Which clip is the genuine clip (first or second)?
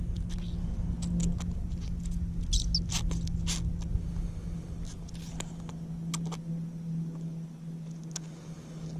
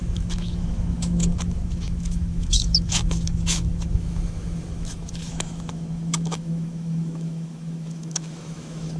first